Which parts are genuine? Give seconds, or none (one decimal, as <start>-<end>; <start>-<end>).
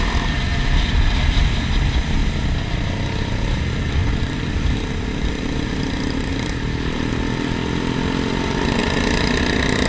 0.0-2.2; 3.3-4.0; 6.3-9.9